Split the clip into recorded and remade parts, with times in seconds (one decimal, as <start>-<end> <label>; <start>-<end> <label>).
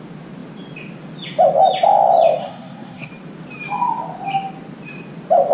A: 0.0-2.4 recorded; 2.4-3.1 remade; 3.1-5.5 recorded